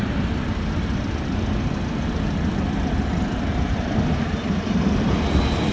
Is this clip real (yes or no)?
yes